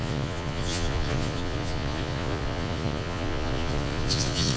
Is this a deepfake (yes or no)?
yes